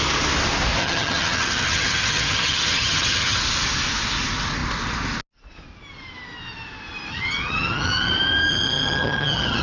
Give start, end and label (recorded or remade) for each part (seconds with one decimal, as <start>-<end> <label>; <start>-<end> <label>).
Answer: 0.0-0.8 recorded; 0.8-3.4 remade; 3.4-7.1 recorded; 7.1-8.1 remade; 8.1-8.5 recorded; 8.5-9.6 remade